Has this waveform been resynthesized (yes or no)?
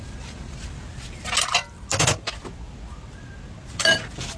no